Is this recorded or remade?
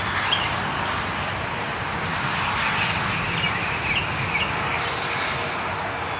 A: recorded